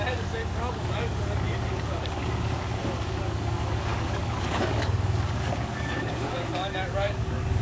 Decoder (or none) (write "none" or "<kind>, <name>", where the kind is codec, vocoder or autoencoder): codec, DAC